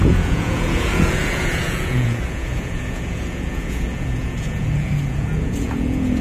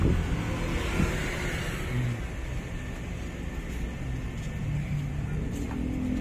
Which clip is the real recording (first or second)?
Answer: second